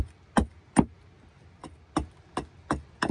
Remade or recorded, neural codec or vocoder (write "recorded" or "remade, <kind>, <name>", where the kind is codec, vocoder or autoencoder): recorded